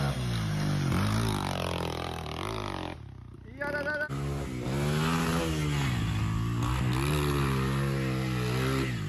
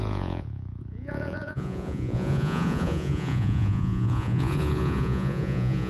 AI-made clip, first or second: second